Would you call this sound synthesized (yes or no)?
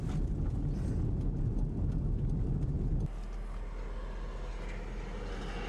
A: no